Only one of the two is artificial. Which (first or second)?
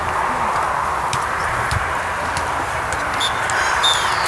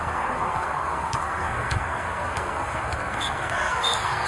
second